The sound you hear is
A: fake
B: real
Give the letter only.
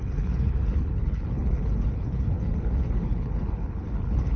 A